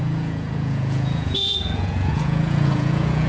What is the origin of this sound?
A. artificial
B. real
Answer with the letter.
A